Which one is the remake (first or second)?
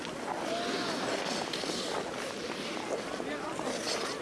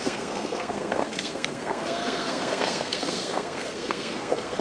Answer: second